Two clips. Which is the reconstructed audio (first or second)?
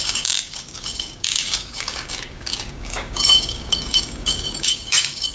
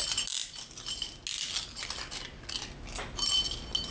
first